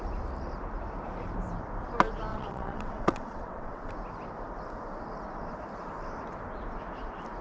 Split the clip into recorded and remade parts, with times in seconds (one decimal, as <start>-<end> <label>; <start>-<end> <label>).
0.0-2.3 recorded; 2.3-3.9 remade; 3.9-7.4 recorded